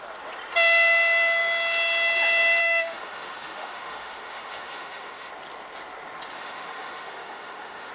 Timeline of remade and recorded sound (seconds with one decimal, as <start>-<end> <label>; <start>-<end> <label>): 0.0-2.6 recorded; 2.6-5.3 remade; 5.3-6.3 recorded; 6.3-7.9 remade